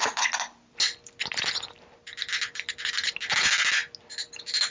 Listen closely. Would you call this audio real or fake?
real